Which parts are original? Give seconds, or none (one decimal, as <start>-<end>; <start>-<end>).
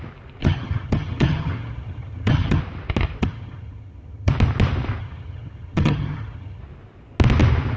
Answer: 0.0-0.4; 2.6-3.2; 4.3-5.0; 6.6-7.8